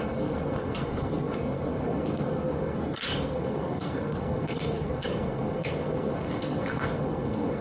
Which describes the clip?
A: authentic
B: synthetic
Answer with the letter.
B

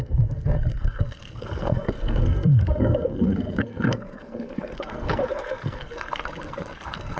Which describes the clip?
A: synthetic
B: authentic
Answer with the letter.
A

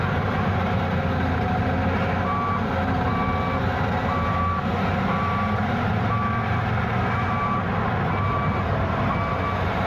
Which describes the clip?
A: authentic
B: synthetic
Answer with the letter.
A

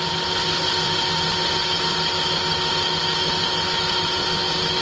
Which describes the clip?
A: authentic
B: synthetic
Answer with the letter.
A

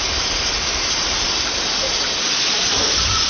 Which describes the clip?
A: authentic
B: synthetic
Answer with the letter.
A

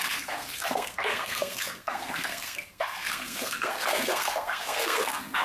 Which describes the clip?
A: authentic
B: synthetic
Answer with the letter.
B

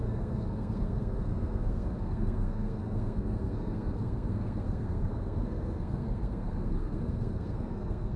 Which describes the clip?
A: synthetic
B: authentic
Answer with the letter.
A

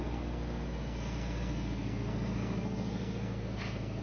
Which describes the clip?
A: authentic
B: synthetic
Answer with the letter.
B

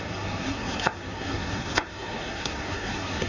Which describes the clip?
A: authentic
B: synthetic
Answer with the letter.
B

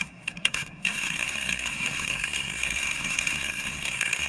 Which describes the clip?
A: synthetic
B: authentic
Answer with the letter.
A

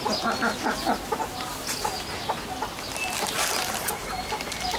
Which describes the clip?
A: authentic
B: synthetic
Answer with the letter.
A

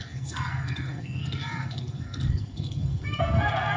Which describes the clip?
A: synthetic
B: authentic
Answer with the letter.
A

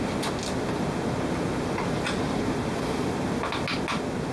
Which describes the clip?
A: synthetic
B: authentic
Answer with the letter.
B